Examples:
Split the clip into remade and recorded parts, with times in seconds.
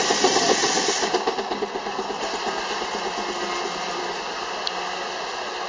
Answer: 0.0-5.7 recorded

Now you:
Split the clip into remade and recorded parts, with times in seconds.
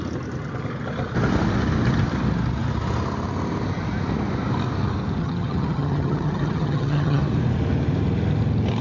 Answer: 0.0-5.2 recorded; 5.2-7.2 remade; 7.2-8.8 recorded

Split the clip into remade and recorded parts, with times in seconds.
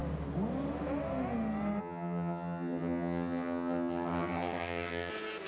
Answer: 0.0-1.8 recorded; 1.8-5.1 remade; 5.1-5.5 recorded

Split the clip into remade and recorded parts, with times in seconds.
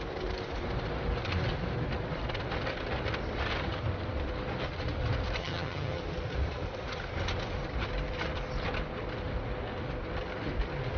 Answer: 0.0-5.4 recorded; 5.4-6.0 remade; 6.0-11.0 recorded